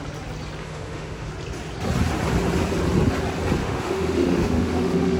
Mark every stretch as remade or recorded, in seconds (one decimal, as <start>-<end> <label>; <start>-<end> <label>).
0.0-0.6 recorded; 0.6-1.3 remade; 1.3-3.6 recorded; 3.6-5.2 remade